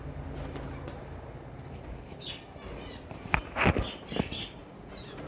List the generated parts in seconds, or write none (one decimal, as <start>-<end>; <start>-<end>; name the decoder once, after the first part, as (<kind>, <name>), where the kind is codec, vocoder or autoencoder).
4.6-5.3 (vocoder, Vocos)